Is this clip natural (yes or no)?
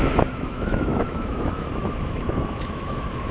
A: no